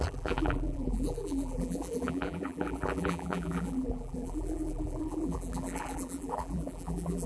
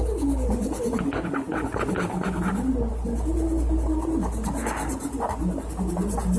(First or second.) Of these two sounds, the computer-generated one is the first